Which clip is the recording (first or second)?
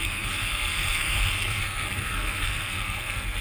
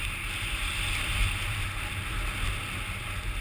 second